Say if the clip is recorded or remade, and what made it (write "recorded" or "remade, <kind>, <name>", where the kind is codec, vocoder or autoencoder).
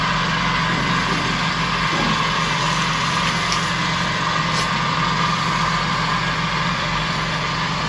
recorded